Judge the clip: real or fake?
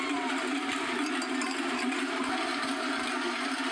real